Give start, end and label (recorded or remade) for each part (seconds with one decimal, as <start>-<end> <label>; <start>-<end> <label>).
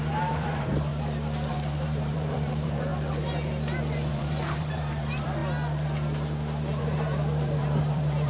0.0-0.9 remade; 0.9-1.5 recorded; 1.5-2.9 remade; 2.9-4.1 recorded; 4.1-5.4 remade; 5.4-6.8 recorded; 6.8-8.3 remade